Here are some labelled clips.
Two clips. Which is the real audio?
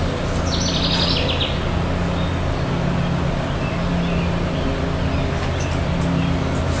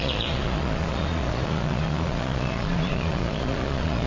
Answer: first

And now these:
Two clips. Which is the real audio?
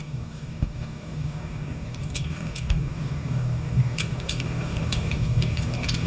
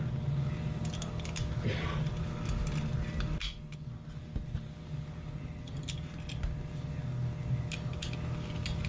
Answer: second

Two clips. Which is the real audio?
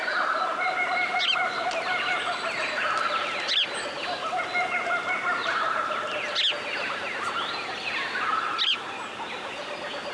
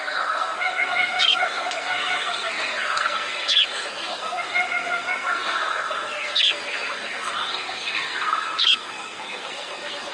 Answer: first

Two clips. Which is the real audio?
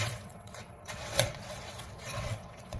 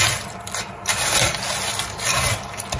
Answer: second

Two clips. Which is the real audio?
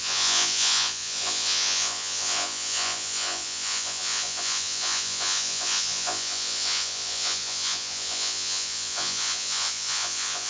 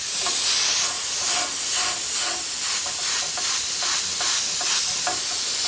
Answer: second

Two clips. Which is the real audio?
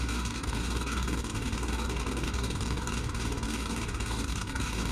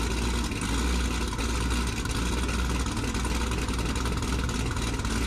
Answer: second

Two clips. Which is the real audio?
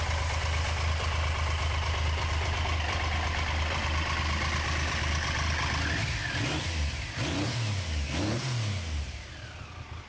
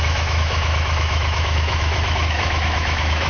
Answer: first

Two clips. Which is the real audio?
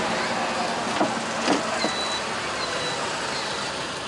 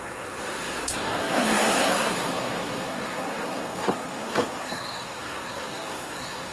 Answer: first